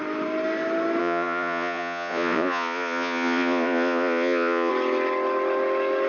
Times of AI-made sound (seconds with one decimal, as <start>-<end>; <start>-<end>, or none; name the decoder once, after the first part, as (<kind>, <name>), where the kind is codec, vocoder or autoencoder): 1.0-4.7 (vocoder, Vocos)